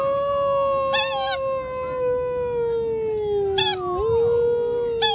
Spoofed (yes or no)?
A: no